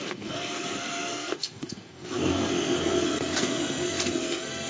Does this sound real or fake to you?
fake